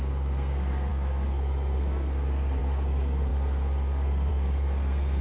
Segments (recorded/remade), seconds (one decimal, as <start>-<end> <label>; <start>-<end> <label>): 0.0-5.2 remade

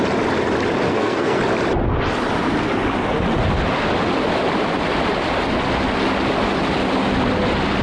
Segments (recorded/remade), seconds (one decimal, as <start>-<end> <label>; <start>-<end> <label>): 0.0-0.9 recorded; 0.9-1.4 remade; 1.4-7.8 recorded